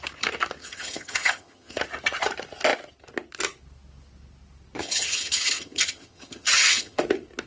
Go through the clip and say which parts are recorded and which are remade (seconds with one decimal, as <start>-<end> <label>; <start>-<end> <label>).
0.0-0.6 recorded; 0.6-1.8 remade; 1.8-4.8 recorded; 4.8-7.0 remade; 7.0-7.5 recorded